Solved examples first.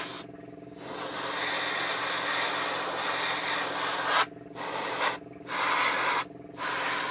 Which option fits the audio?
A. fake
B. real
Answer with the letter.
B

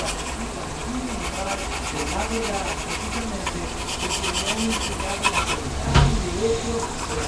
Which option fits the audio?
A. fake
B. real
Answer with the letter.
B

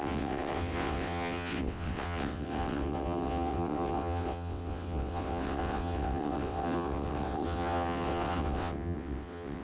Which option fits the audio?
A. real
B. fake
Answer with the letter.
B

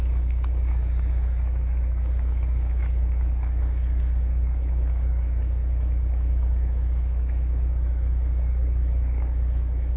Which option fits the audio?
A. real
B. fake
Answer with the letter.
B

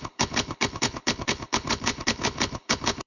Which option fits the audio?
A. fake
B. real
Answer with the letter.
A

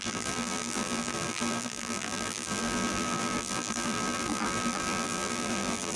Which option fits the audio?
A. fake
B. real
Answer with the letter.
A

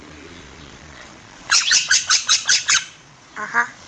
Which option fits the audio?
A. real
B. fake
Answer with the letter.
B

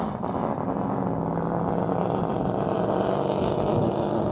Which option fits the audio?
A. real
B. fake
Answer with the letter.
A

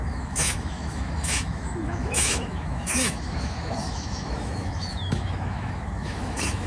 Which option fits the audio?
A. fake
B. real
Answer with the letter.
A